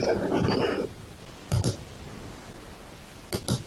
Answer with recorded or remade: recorded